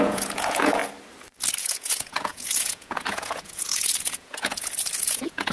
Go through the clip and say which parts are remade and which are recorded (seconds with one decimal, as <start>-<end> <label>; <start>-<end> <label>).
0.0-0.8 remade; 0.8-1.6 recorded; 1.6-5.5 remade